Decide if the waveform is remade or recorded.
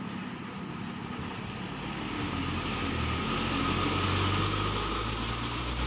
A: recorded